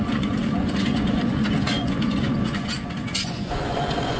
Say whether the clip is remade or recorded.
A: remade